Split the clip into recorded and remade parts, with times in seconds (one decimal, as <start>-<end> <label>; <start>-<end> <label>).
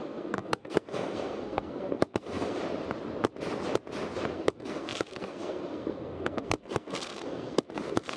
0.0-2.6 remade; 2.6-4.3 recorded; 4.3-8.2 remade